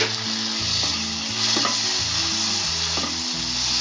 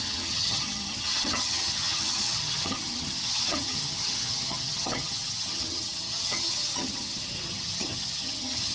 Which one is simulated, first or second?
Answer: second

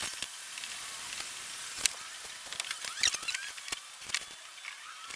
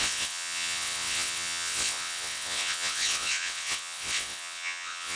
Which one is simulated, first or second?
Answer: second